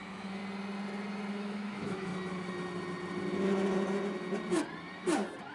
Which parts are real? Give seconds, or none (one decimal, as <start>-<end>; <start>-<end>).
0.4-1.3; 2.1-5.5